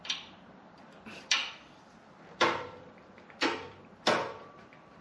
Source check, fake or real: fake